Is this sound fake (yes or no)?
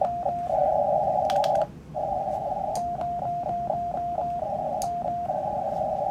no